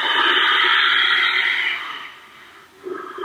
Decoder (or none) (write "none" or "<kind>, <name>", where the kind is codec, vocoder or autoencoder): none